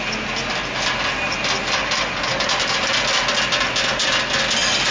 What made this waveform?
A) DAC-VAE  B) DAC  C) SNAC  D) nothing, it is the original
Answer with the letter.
D